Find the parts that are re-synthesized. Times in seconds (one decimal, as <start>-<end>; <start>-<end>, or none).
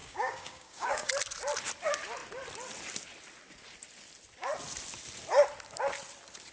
0.0-1.1